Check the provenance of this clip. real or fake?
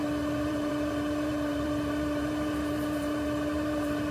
fake